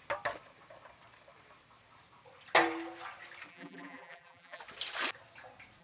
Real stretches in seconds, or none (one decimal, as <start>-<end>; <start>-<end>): 0.0-3.5; 4.6-5.8